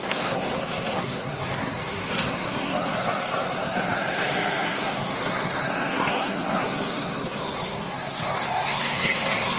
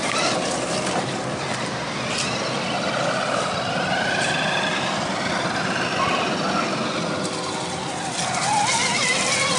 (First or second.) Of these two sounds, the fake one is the first